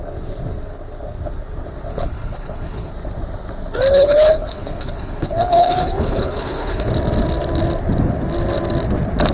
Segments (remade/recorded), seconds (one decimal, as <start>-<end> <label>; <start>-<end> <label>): 0.0-1.9 recorded; 1.9-2.9 remade; 2.9-3.9 recorded; 3.9-6.9 remade; 6.9-9.3 recorded